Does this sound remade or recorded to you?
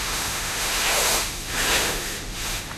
remade